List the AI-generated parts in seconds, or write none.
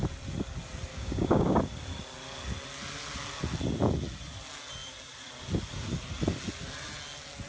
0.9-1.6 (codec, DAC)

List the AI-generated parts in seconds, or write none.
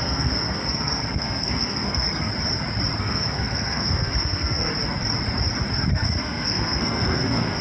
0.0-2.3 (codec, SNAC); 3.0-4.7; 5.9-7.6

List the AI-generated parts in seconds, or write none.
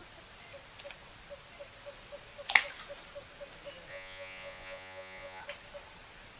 3.9-5.4 (vocoder, Vocos)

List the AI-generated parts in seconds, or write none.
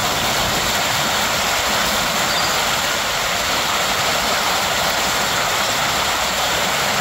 3.0-4.1 (vocoder, BigVGAN v2); 5.5-7.0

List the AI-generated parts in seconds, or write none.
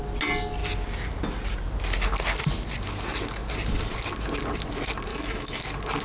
5.1-5.6 (autoencoder, DAC-VAE)